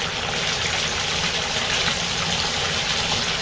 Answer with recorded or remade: recorded